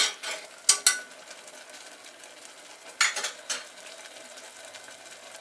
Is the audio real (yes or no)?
yes